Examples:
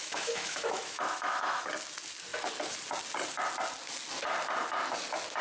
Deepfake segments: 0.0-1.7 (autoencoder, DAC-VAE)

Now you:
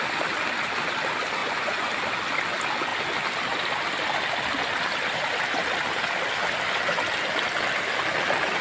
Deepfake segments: 1.4-1.9 (vocoder, Vocos)

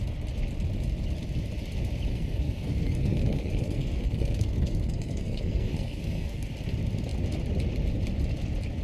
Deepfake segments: 2.1-6.5 (codec, SNAC)

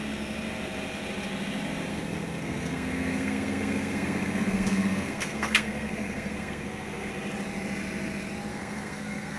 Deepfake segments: 1.9-7.1 (codec, SNAC); 8.5-9.4

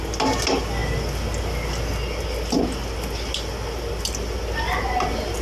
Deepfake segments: none

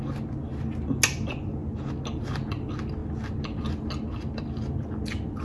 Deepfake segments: none

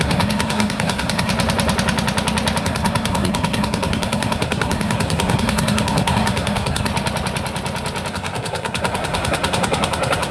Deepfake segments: 0.0-1.3 (codec, SNAC); 2.6-6.9; 8.1-10.3